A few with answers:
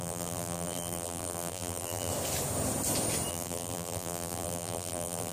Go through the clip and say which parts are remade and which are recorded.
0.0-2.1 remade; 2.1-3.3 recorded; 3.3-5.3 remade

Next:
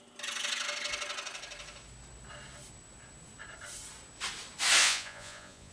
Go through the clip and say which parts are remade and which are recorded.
0.0-4.8 recorded; 4.8-5.7 remade